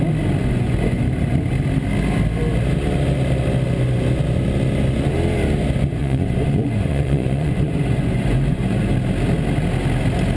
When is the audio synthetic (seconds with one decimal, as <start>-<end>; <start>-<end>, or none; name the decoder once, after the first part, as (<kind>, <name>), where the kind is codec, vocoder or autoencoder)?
0.4-1.0 (vocoder, Vocos); 6.0-8.9